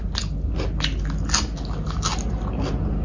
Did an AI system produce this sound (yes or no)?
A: no